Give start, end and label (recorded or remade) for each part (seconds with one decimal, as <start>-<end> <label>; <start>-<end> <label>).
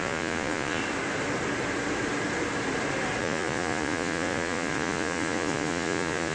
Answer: 0.0-0.8 remade; 0.8-3.2 recorded; 3.2-6.3 remade